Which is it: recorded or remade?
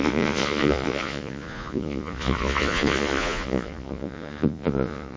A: remade